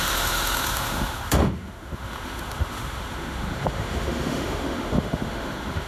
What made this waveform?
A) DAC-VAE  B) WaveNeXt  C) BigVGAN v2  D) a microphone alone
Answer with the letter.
A